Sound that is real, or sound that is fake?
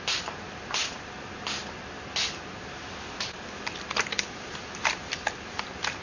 real